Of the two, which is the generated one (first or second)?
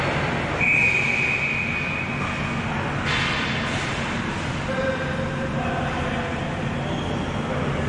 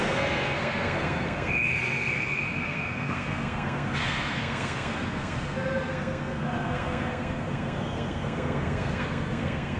second